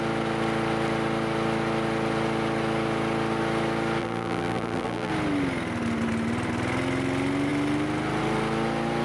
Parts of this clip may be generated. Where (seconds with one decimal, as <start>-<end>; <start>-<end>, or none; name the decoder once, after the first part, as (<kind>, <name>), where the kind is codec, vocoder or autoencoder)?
4.0-5.1 (vocoder, BigVGAN v2)